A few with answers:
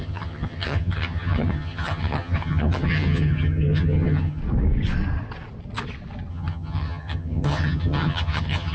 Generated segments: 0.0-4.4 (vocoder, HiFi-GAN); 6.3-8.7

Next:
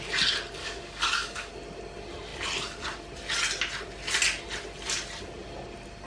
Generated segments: 0.6-1.5 (codec, DAC)

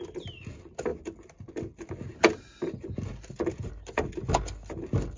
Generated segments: none

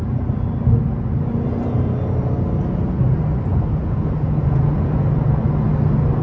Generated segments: 3.5-5.4 (vocoder, Vocos)

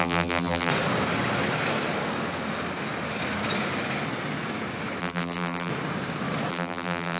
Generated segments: 0.0-0.7 (vocoder, BigVGAN v2); 5.0-5.7; 6.5-7.2

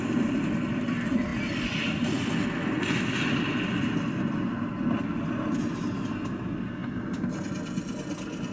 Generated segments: none

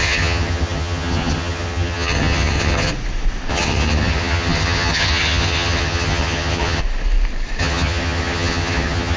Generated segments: 0.0-2.9 (vocoder, HiFi-GAN); 3.5-6.8; 7.6-9.2